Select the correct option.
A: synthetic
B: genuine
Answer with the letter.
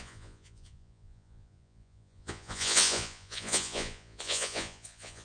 A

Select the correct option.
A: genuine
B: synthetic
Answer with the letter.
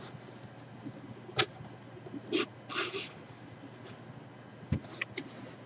A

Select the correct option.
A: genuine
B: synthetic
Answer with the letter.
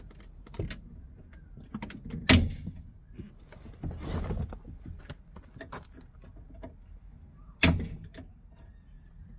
A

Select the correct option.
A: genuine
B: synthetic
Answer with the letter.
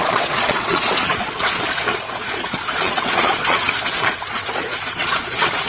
B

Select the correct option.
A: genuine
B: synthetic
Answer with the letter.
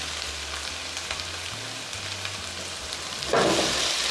A